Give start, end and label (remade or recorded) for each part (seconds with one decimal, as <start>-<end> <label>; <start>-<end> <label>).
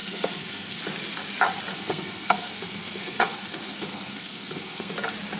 0.0-0.8 remade; 0.8-1.7 recorded; 1.7-4.9 remade; 4.9-5.4 recorded